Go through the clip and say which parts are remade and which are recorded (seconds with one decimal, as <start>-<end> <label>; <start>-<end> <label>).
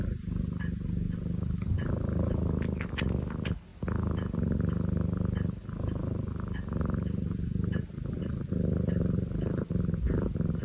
0.0-10.6 recorded